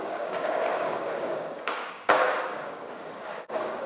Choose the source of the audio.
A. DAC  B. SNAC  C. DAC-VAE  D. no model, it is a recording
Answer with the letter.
A